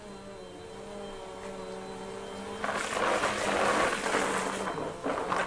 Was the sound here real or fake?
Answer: real